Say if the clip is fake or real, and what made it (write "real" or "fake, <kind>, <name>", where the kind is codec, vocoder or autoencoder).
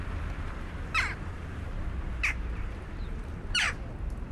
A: fake, vocoder, BigVGAN v2